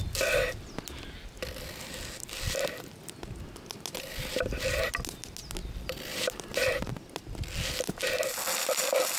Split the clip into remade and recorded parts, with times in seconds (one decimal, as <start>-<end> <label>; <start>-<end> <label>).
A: 0.0-9.2 recorded